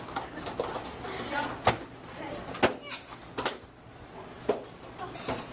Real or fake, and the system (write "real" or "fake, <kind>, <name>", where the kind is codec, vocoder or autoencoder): real